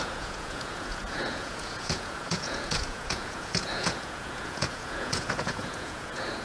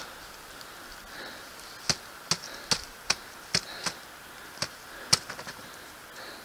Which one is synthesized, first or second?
first